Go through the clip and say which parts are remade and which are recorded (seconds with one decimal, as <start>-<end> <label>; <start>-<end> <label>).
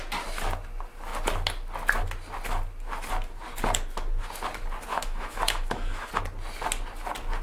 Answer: 0.0-4.9 recorded; 4.9-6.1 remade; 6.1-7.4 recorded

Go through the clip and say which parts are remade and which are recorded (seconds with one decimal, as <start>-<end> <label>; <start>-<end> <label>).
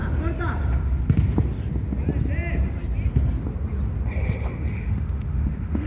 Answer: 0.0-4.7 recorded; 4.7-5.9 remade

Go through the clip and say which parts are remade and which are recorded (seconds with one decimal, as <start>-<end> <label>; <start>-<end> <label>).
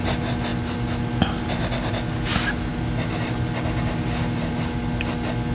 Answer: 0.0-5.5 recorded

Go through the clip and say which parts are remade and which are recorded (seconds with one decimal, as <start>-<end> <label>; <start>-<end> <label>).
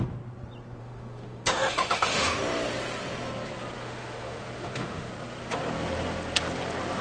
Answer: 0.0-0.8 recorded; 0.8-2.4 remade; 2.4-3.8 recorded; 3.8-5.1 remade; 5.1-7.0 recorded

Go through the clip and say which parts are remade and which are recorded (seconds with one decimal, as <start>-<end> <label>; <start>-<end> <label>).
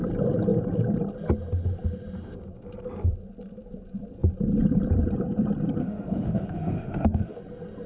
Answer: 0.0-5.8 recorded; 5.8-7.4 remade; 7.4-7.9 recorded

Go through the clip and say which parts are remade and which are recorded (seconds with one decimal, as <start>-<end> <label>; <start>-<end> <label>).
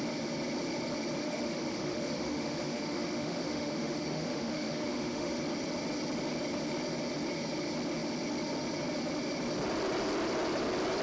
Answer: 0.0-1.2 recorded; 1.2-5.4 remade; 5.4-11.0 recorded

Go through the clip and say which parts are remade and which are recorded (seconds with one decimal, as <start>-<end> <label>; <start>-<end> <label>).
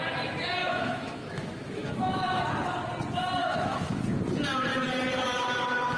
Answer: 0.0-0.6 recorded; 0.6-2.4 remade; 2.4-3.4 recorded; 3.4-4.0 remade; 4.0-6.0 recorded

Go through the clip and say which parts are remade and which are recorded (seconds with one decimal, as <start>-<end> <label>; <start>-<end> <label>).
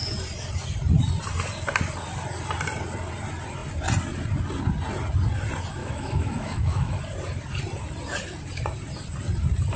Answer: 0.0-5.8 recorded; 5.8-7.0 remade; 7.0-9.8 recorded